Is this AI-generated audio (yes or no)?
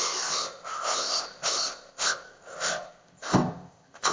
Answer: yes